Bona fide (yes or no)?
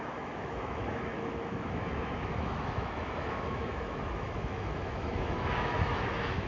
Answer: no